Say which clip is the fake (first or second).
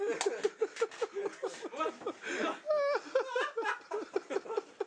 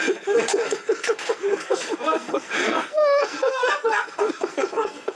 second